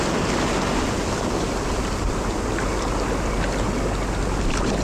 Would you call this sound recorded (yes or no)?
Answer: yes